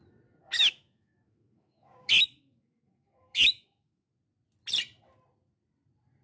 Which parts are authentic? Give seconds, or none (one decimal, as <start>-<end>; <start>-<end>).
0.0-0.4; 4.1-6.2